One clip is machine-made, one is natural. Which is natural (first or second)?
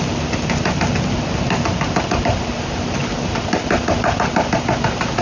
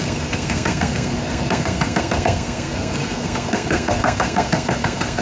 first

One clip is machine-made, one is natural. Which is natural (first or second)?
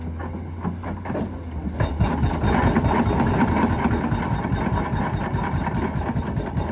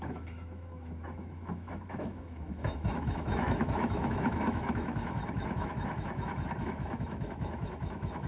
first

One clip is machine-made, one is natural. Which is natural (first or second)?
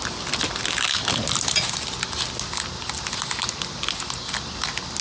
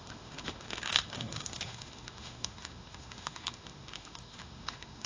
first